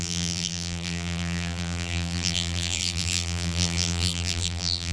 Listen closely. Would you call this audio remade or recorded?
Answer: remade